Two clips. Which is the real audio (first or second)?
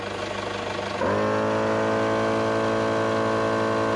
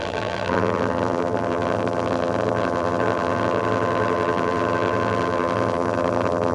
first